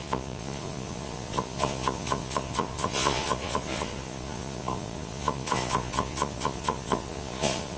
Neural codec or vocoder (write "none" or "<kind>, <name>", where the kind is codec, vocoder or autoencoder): vocoder, Vocos